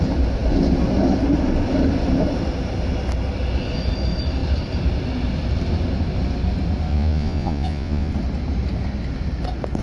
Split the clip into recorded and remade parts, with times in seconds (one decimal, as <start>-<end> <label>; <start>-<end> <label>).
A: 0.0-6.9 recorded; 6.9-8.1 remade; 8.1-9.8 recorded